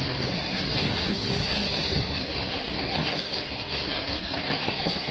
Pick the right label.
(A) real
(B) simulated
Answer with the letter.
B